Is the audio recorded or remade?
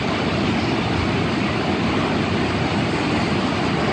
recorded